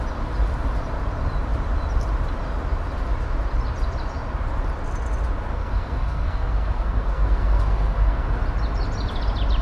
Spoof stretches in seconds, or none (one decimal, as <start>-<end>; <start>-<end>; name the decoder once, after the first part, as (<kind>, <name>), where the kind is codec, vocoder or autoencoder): 5.5-8.4 (codec, SNAC)